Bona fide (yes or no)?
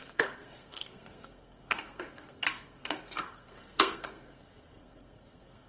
no